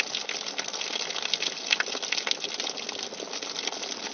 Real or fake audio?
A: real